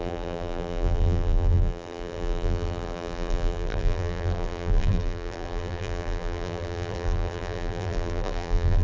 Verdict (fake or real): fake